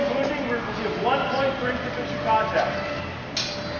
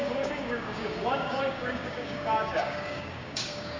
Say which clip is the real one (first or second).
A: first